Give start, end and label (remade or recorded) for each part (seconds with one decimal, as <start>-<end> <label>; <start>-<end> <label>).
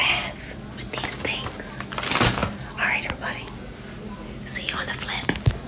0.0-5.7 recorded